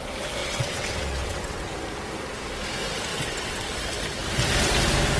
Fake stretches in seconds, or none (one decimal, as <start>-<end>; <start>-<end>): 0.4-1.7; 3.1-3.8